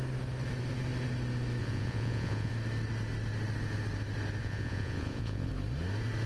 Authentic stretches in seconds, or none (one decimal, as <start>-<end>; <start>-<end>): 0.0-1.6; 2.5-4.4; 5.5-6.3